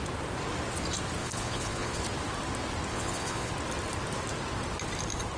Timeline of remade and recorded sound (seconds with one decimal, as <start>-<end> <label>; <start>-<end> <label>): 0.0-1.2 recorded; 1.2-2.0 remade; 2.0-2.9 recorded; 2.9-3.5 remade; 3.5-5.4 recorded